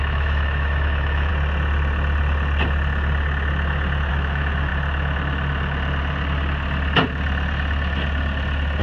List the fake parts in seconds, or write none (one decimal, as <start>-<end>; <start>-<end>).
0.0-1.3; 4.1-4.7